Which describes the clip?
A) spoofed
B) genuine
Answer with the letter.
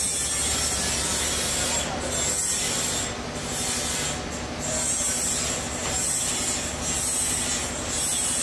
B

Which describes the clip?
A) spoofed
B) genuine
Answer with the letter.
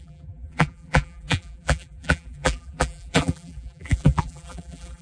A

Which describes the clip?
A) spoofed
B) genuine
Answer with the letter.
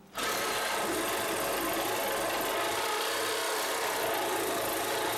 B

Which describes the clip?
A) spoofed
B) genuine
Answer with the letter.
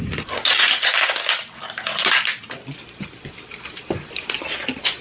A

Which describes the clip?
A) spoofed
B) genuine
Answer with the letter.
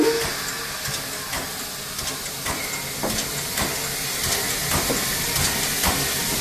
B